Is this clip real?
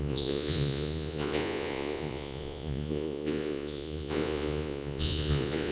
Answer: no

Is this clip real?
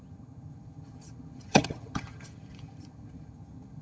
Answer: no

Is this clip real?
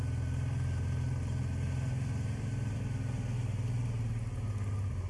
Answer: yes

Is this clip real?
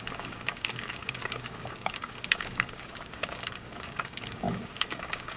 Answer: no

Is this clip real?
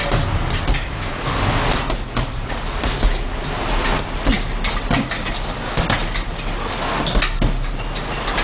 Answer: yes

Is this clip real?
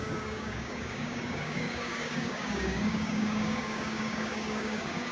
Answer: no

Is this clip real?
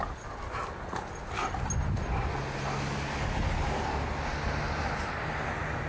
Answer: yes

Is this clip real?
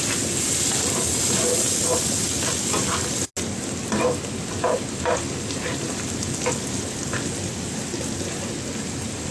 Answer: yes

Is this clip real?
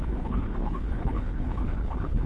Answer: no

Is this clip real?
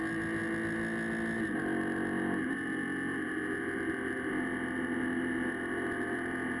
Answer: yes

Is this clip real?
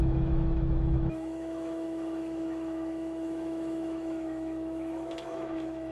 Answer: no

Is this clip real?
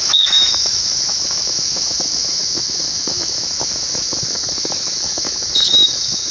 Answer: no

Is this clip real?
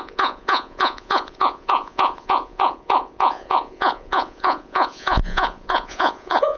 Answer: no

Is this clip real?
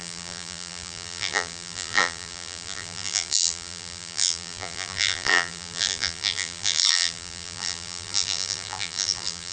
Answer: no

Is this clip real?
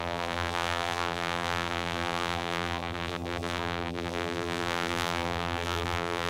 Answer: no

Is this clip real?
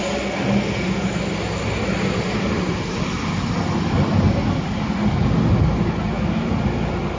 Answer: yes